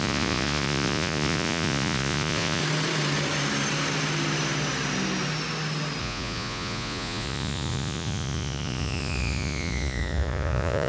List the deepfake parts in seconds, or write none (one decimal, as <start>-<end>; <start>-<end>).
0.0-2.6; 6.0-10.9